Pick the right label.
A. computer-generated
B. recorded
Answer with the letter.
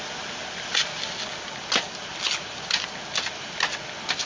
B